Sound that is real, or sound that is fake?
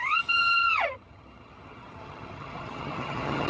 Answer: fake